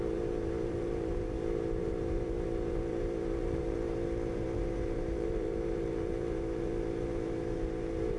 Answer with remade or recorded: remade